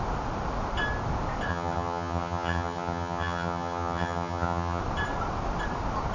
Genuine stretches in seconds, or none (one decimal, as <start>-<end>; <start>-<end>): 0.0-1.5; 4.8-6.1